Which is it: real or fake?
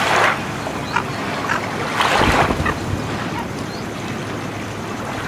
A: real